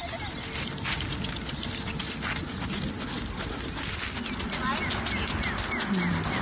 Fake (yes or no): no